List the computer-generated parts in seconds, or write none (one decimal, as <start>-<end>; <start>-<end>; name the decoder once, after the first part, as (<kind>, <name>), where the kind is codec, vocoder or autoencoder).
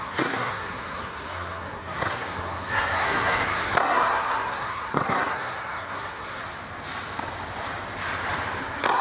0.0-6.4 (codec, SNAC); 8.6-9.0